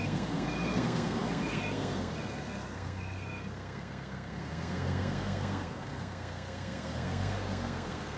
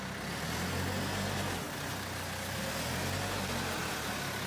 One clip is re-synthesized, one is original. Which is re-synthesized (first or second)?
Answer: first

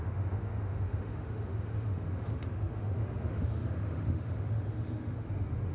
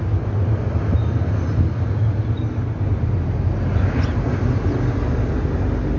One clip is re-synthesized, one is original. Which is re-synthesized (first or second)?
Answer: first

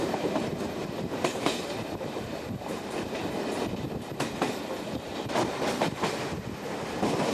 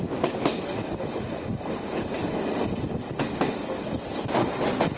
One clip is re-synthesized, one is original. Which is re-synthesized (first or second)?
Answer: first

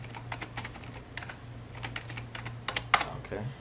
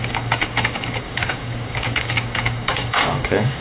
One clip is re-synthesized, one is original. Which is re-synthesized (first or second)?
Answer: second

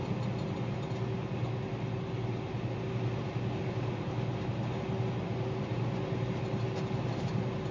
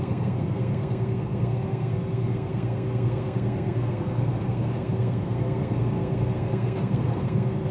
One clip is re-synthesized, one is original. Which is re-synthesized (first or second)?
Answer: second